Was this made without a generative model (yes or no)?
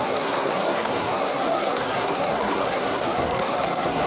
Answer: no